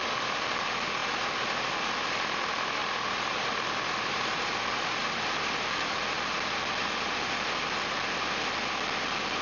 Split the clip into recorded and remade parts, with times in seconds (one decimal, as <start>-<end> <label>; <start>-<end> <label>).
0.0-2.8 recorded; 2.8-3.3 remade; 3.3-9.4 recorded